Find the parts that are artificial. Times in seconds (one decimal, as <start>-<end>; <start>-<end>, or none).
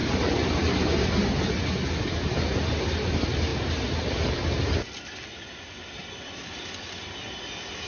none